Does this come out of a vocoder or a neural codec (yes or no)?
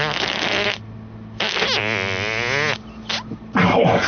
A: no